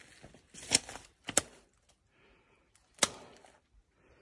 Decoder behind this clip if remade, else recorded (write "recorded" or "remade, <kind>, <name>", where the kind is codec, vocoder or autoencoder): recorded